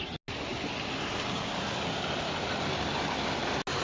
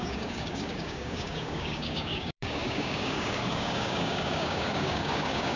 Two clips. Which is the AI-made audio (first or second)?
second